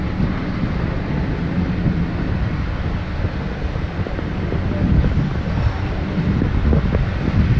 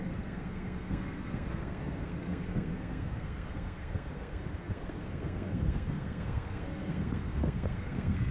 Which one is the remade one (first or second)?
second